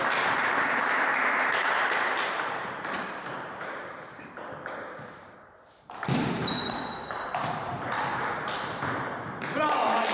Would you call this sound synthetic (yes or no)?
yes